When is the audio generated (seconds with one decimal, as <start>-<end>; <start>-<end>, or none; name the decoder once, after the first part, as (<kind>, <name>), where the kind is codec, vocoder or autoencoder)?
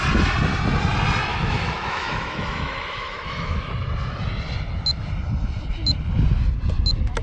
1.3-3.7 (autoencoder, DAC-VAE)